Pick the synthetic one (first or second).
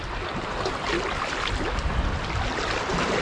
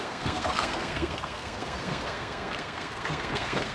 second